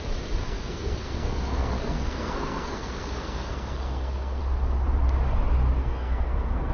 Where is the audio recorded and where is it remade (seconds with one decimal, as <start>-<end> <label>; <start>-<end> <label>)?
0.0-0.4 recorded; 0.4-4.4 remade; 4.4-5.8 recorded; 5.8-6.7 remade